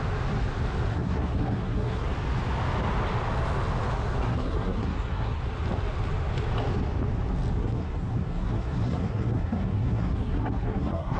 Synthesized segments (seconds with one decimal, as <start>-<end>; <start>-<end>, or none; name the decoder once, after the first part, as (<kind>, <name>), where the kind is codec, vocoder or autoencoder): 0.9-2.1 (codec, SNAC); 4.2-5.4; 7.6-11.2